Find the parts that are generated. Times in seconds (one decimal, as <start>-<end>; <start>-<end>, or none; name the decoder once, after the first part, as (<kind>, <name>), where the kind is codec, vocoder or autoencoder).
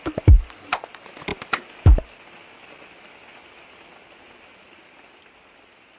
none